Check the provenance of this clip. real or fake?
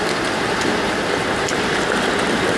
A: real